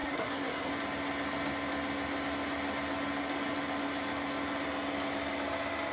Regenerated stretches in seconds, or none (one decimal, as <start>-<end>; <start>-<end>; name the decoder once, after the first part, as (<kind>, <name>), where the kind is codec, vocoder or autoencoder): 0.0-0.7 (codec, SNAC)